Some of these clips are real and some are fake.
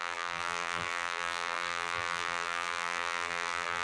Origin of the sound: fake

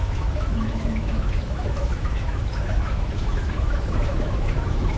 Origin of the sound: fake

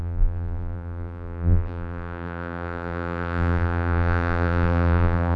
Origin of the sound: fake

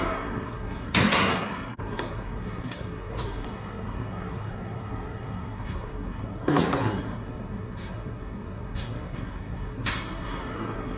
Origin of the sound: fake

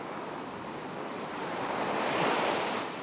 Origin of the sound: fake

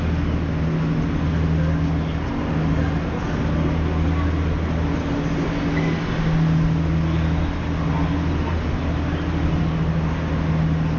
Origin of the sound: real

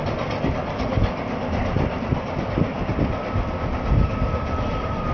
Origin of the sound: real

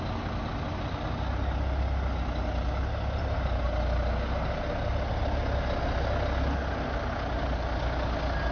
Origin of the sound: real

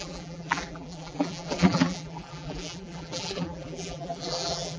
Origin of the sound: fake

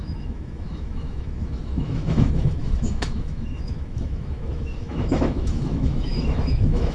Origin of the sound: fake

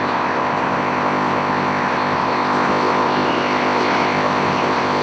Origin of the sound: fake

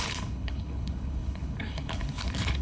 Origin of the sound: fake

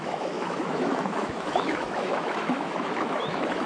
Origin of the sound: fake